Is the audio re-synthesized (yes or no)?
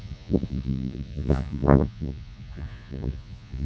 yes